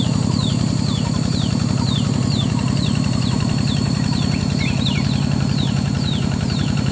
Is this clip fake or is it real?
fake